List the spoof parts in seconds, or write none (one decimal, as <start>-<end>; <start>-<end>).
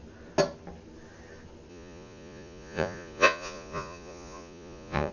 1.7-5.1